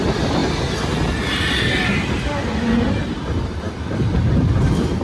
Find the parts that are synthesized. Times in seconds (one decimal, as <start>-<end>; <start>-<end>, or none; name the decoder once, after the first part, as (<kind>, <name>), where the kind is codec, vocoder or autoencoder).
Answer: none